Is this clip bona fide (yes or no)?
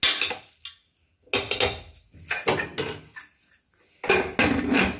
yes